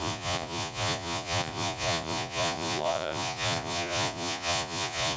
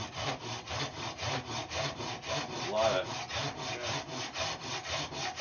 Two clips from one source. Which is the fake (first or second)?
first